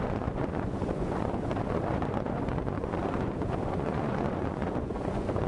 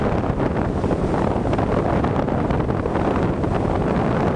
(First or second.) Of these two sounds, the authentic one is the second